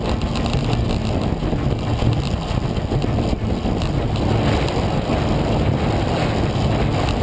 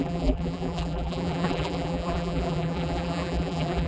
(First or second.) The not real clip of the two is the second